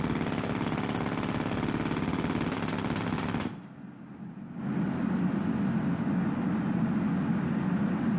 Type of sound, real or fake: real